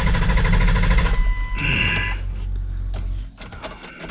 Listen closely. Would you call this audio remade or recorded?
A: recorded